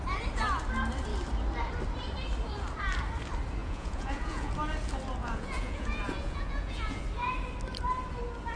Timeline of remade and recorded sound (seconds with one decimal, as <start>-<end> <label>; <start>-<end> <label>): 0.0-3.6 recorded; 3.6-4.5 remade; 4.5-5.2 recorded; 5.2-7.0 remade; 7.0-8.6 recorded